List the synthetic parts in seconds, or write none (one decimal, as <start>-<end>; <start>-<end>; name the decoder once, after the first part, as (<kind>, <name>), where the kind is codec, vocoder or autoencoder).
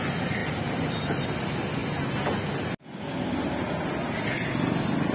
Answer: none